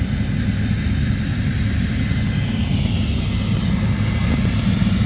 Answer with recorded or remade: recorded